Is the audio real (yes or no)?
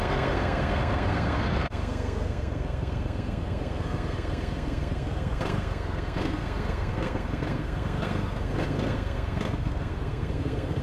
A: no